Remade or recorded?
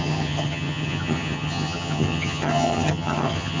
remade